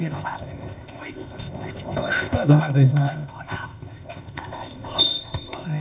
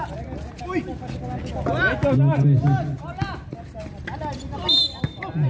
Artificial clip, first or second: first